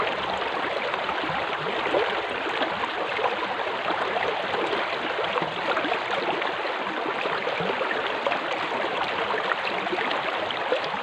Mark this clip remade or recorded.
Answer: remade